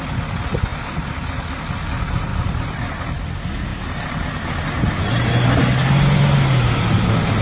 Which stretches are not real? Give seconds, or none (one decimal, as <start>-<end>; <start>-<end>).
2.3-3.0; 3.7-4.6